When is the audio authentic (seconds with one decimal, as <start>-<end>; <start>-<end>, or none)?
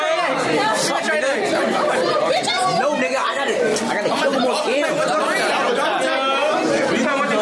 0.0-7.4